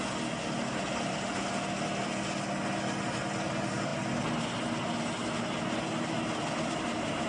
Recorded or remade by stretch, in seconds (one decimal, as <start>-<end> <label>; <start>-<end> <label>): 0.0-7.3 recorded